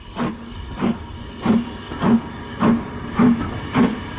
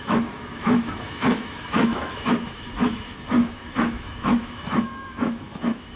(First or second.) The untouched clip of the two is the first